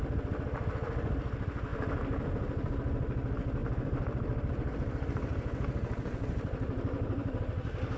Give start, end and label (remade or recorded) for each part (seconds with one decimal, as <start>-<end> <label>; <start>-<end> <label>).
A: 0.0-3.6 recorded; 3.6-7.4 remade; 7.4-8.0 recorded